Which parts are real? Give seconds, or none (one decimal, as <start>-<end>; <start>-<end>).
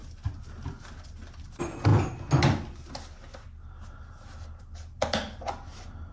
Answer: 0.0-6.1